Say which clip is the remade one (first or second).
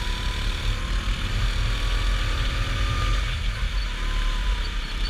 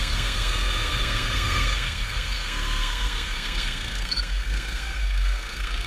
second